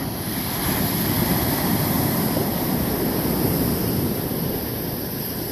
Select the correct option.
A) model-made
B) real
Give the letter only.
B